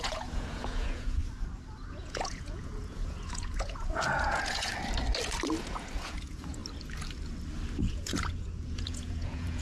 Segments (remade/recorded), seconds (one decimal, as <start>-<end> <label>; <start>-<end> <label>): 0.0-1.2 remade; 1.2-1.9 recorded; 1.9-4.7 remade; 4.7-5.6 recorded; 5.6-6.6 remade; 6.6-7.8 recorded; 7.8-9.6 remade